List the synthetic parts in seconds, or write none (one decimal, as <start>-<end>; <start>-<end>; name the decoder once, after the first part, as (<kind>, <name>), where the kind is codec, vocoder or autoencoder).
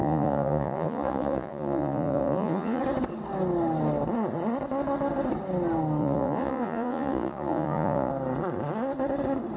0.0-2.8 (vocoder, Vocos); 6.0-8.1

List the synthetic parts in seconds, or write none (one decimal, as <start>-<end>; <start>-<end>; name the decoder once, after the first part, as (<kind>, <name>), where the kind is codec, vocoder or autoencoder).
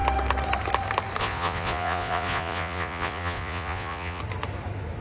1.2-4.2 (vocoder, Vocos)